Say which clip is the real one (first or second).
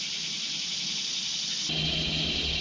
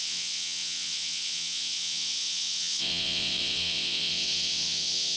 first